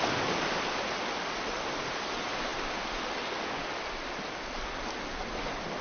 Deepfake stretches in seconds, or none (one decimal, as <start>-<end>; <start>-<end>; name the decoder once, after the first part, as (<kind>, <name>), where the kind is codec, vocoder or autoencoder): none